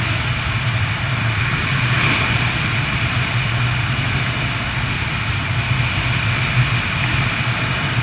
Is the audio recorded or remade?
recorded